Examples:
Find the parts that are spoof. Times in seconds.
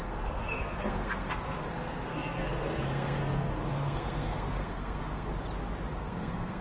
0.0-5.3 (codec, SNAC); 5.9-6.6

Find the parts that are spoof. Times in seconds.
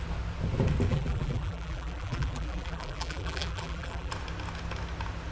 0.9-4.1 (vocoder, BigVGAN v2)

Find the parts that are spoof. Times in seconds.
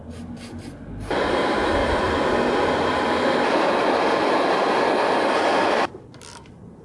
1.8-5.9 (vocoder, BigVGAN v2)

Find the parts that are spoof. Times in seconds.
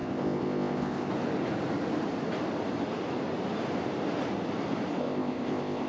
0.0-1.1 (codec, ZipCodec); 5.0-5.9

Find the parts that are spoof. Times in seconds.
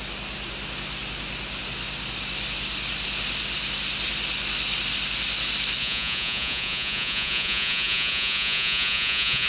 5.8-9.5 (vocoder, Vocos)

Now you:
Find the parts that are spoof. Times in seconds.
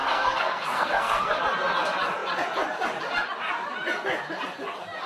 0.0-1.4 (codec, SNAC)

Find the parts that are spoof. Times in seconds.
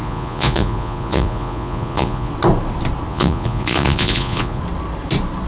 0.0-2.3 (vocoder, Vocos); 3.1-4.6